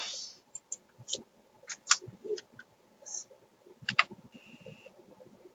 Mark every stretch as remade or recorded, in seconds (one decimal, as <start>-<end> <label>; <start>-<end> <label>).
0.0-0.6 remade; 0.6-5.5 recorded